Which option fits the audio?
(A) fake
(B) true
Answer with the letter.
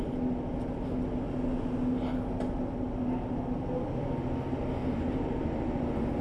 B